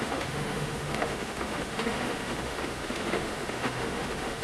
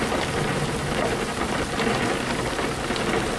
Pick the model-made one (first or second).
first